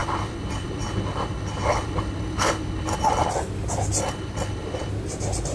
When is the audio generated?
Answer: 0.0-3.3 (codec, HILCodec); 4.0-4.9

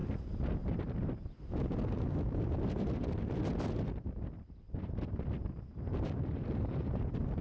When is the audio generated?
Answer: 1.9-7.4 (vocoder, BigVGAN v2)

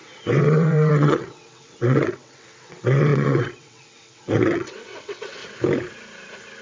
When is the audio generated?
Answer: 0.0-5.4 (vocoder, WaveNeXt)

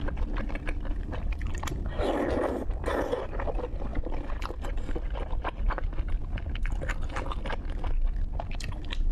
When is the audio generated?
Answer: none

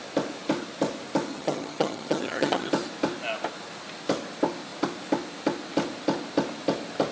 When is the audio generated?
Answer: 1.3-2.7 (vocoder, HiFi-GAN)

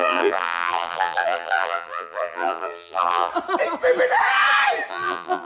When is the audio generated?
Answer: 0.0-3.3 (vocoder, BigVGAN v2); 4.9-5.5

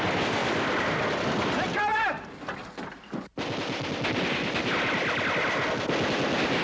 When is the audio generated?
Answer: none

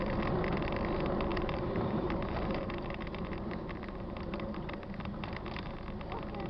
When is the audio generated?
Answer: 1.3-5.2 (vocoder, BigVGAN v2)